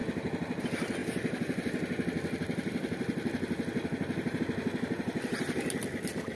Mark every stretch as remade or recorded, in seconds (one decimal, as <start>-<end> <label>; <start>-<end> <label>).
0.0-1.0 recorded; 1.0-4.4 remade; 4.4-6.4 recorded

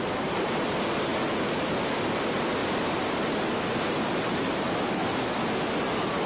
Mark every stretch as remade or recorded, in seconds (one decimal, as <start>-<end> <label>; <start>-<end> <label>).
0.0-6.3 recorded

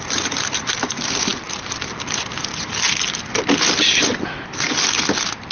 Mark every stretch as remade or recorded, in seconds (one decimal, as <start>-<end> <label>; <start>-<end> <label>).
0.0-5.5 recorded

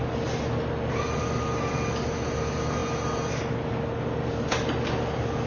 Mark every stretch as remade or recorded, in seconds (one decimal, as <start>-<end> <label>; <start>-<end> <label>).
0.0-5.5 recorded

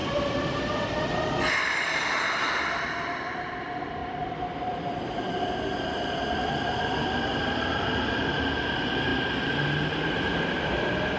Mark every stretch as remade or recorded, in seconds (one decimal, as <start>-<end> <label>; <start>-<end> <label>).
0.0-1.6 remade; 1.6-4.0 recorded; 4.0-8.5 remade; 8.5-11.2 recorded

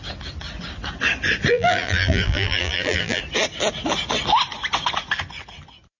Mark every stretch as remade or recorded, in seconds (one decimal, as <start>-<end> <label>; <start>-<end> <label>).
0.0-1.5 recorded; 1.5-3.2 remade; 3.2-6.0 recorded

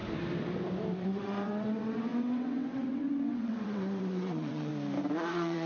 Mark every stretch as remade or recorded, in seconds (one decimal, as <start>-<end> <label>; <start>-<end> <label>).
0.0-1.0 recorded; 1.0-4.7 remade; 4.7-5.3 recorded; 5.3-5.7 remade